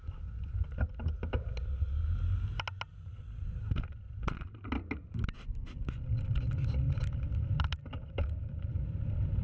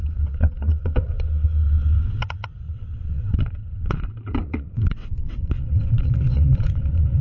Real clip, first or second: first